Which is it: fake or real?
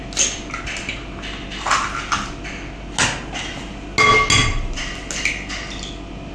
real